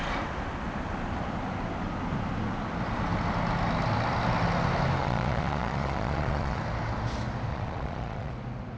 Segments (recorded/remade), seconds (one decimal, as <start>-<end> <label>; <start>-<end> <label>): 0.0-5.0 recorded; 5.0-6.6 remade; 6.6-7.5 recorded; 7.5-8.3 remade; 8.3-8.8 recorded